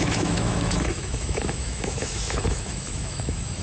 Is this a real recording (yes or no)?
no